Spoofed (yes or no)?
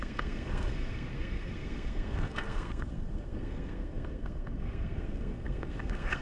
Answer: yes